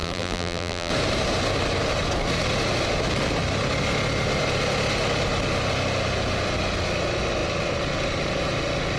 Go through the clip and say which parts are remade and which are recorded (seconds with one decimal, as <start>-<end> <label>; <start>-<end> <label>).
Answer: 0.0-0.9 remade; 0.9-9.0 recorded